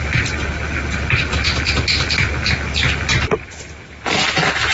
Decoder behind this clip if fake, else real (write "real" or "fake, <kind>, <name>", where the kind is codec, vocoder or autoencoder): real